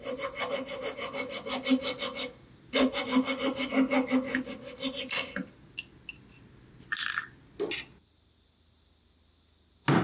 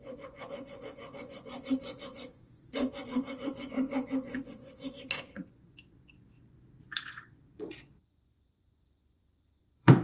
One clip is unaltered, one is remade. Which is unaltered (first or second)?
first